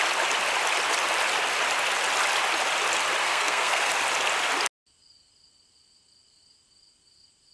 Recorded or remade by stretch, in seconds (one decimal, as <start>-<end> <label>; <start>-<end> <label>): 0.0-3.2 recorded; 3.2-3.9 remade; 3.9-7.5 recorded